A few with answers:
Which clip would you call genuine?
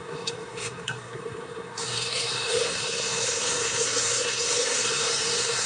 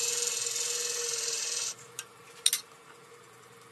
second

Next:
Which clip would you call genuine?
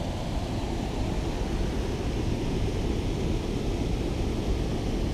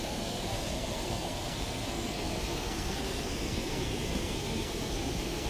first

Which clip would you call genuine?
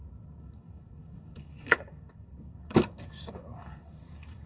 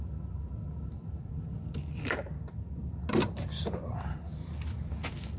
second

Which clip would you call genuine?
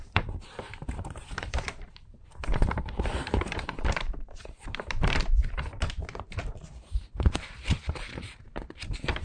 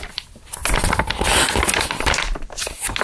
second